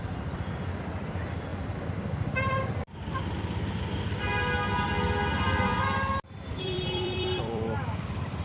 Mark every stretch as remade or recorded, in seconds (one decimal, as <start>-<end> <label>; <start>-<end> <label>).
0.0-1.5 remade; 1.5-6.5 recorded; 6.5-8.4 remade